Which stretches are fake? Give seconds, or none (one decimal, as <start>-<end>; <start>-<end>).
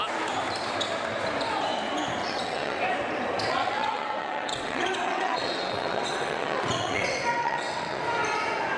2.2-2.8; 3.5-8.0